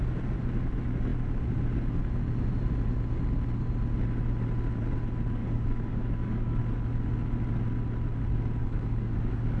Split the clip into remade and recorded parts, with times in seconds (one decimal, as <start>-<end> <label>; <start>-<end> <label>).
0.0-5.4 recorded; 5.4-6.6 remade; 6.6-8.6 recorded; 8.6-9.6 remade